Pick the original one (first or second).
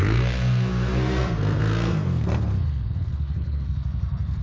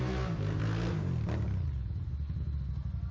second